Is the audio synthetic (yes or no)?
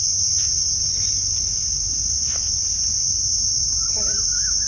no